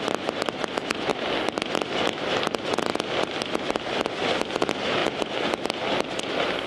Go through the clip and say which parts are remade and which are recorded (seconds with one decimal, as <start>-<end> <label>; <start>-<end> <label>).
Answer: 0.0-6.7 recorded